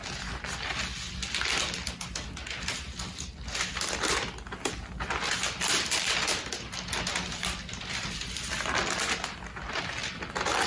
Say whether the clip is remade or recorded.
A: recorded